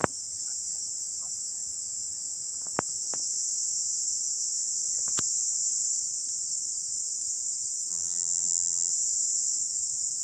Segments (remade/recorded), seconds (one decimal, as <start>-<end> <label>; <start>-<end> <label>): 0.0-7.9 recorded; 7.9-8.9 remade; 8.9-10.2 recorded